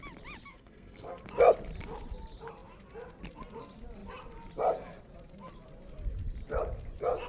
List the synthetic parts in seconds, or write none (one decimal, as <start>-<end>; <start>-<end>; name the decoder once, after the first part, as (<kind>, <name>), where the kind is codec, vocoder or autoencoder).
0.5-1.2 (codec, SNAC)